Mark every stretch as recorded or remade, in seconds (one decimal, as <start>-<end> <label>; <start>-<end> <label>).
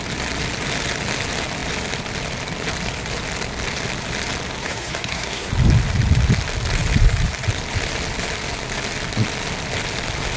0.0-4.6 recorded; 4.6-5.5 remade; 5.5-10.4 recorded